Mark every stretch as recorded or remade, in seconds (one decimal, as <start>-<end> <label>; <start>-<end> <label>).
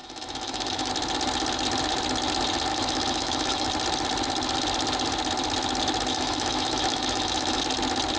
0.0-0.9 remade; 0.9-2.7 recorded; 2.7-3.7 remade; 3.7-6.1 recorded; 6.1-7.6 remade; 7.6-8.2 recorded